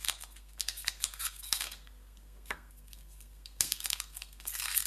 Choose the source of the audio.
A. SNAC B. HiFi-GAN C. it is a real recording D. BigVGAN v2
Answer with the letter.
A